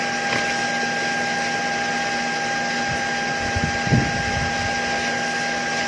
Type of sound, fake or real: real